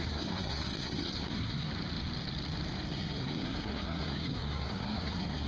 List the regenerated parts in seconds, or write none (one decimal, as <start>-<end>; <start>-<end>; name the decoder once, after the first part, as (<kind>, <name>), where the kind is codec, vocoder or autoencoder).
0.0-1.7 (codec, SNAC); 2.9-5.5